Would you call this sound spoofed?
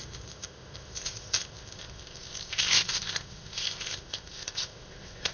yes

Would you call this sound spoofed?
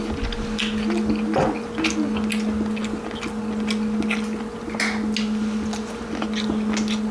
no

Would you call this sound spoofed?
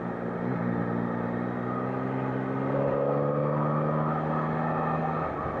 no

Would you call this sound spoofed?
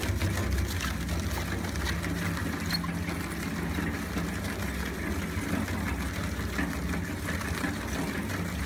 no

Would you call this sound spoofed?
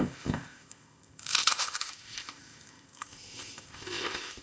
yes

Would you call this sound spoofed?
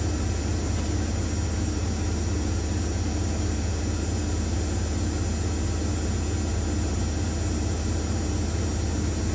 no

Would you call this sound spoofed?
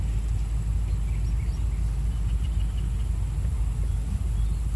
no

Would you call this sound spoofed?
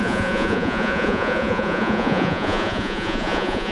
yes